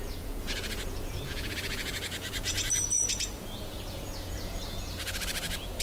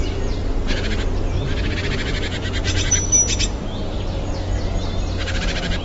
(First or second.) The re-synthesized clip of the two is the first